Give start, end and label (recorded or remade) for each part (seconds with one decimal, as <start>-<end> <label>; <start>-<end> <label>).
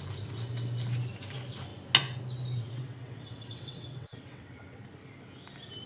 0.0-2.6 recorded; 2.6-4.8 remade; 4.8-5.9 recorded